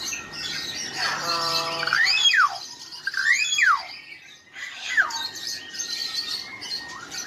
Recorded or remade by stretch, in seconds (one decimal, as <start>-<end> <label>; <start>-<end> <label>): 0.0-7.3 recorded